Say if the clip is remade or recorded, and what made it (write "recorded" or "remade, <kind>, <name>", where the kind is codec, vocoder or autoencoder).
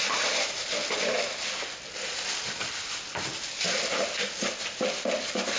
recorded